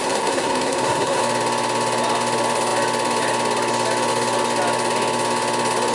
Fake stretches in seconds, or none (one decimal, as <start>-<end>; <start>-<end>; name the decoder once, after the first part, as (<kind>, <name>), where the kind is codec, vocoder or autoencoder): 0.0-1.2 (codec, SNAC)